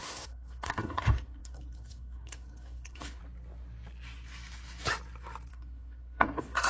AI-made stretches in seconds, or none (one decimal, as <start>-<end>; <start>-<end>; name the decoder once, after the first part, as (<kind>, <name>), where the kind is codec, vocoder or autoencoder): 0.0-3.2 (codec, SNAC); 5.5-6.7